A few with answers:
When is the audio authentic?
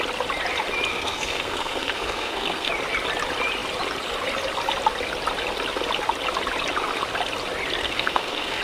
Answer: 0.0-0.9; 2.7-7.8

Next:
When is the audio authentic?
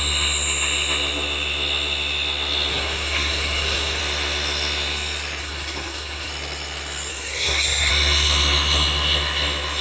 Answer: 0.0-2.7; 4.0-5.4; 6.3-7.1; 7.9-9.8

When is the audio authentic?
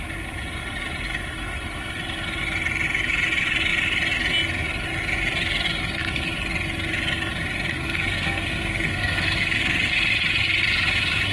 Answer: 0.0-7.7; 9.9-11.3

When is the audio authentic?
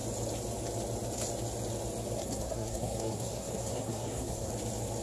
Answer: 0.0-2.2; 4.5-5.0